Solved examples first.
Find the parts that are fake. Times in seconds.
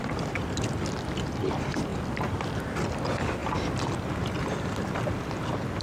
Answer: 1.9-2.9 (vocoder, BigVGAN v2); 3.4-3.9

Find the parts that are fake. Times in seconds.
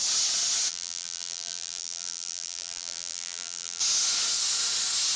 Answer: 0.7-3.8 (vocoder, BigVGAN v2)